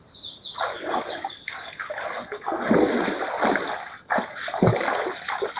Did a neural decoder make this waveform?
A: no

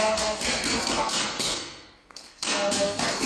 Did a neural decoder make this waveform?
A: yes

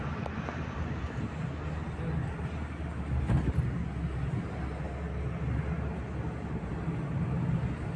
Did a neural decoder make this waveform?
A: no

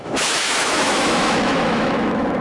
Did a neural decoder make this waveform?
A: yes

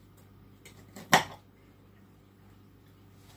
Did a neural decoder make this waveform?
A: no